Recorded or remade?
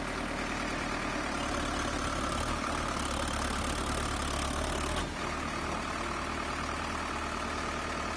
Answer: recorded